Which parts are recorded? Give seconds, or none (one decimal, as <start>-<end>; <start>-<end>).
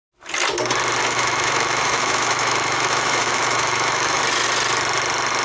0.0-1.0; 4.2-5.4